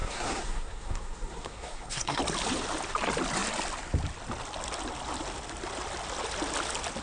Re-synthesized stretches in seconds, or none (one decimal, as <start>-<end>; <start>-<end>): 0.0-2.2